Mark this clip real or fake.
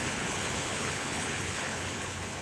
fake